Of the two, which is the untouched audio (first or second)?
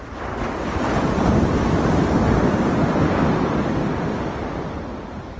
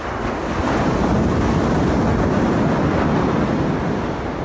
second